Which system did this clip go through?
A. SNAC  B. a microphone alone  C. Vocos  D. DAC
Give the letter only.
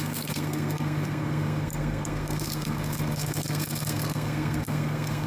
A